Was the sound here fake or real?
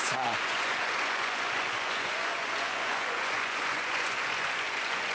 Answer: fake